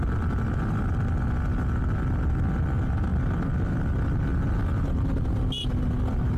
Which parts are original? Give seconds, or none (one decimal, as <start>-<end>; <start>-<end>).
0.0-6.4